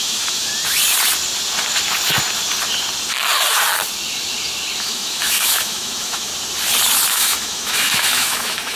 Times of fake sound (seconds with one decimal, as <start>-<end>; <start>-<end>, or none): 0.0-0.5; 4.8-6.3; 7.1-8.8